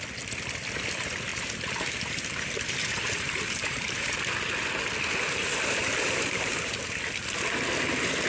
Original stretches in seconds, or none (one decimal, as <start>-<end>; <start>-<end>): 0.0-1.3; 4.2-5.8; 6.7-8.3